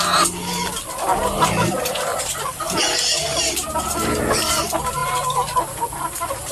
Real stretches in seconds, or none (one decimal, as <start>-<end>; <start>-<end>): 0.0-2.1; 2.8-3.3; 3.8-6.5